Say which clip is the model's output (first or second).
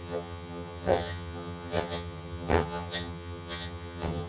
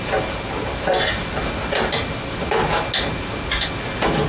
first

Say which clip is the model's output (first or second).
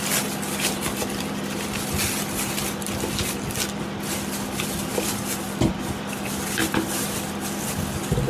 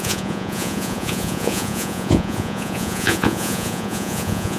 second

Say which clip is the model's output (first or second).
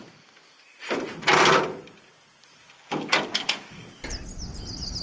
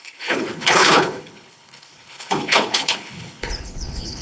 second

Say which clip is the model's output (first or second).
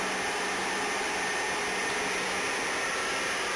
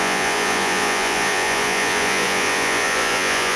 second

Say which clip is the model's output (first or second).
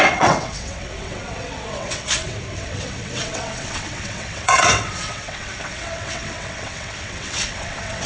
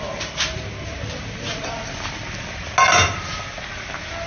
first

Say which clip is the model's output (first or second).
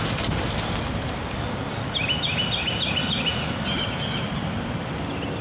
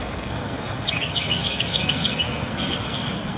second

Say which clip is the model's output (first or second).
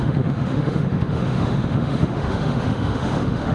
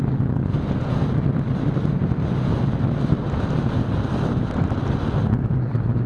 first